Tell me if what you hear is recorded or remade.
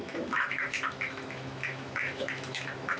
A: remade